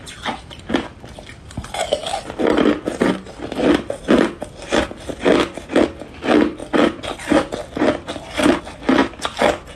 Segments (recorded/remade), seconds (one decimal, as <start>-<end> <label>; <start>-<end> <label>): 0.0-9.8 recorded